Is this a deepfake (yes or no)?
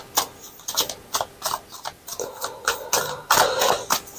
no